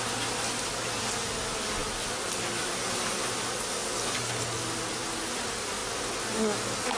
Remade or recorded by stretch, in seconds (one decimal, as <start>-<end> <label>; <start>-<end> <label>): 0.0-7.0 recorded